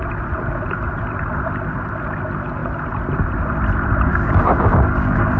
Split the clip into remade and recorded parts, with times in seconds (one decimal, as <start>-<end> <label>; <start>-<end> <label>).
0.0-4.1 recorded; 4.1-5.4 remade

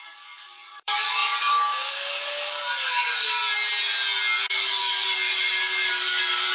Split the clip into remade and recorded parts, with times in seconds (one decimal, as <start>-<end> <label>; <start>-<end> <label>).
0.0-3.4 remade; 3.4-4.5 recorded; 4.5-6.5 remade

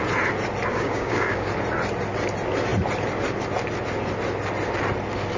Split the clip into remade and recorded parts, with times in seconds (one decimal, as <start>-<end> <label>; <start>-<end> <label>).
0.0-0.7 recorded; 0.7-1.5 remade; 1.5-5.4 recorded

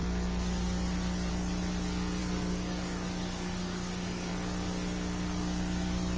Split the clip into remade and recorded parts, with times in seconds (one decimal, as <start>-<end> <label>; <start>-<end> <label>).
0.0-2.2 recorded; 2.2-4.3 remade; 4.3-6.2 recorded

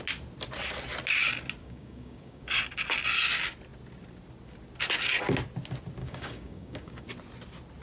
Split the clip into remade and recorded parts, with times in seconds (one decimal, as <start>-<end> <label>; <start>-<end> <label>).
0.0-1.6 recorded; 1.6-2.6 remade; 2.6-6.0 recorded; 6.0-7.1 remade; 7.1-7.8 recorded

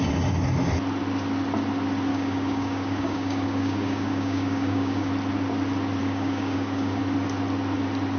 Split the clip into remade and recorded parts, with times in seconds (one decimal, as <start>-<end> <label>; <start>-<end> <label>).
0.0-2.1 recorded; 2.1-5.1 remade; 5.1-6.0 recorded; 6.0-7.0 remade; 7.0-8.2 recorded